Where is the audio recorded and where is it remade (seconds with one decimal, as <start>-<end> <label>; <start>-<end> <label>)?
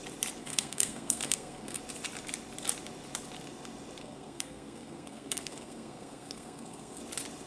0.0-0.4 recorded; 0.4-1.8 remade; 1.8-4.0 recorded; 4.0-7.0 remade; 7.0-7.5 recorded